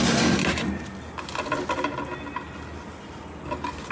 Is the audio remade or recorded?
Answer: recorded